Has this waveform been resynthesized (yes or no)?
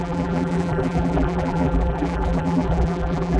yes